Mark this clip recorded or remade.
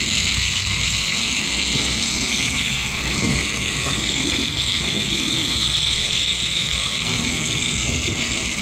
remade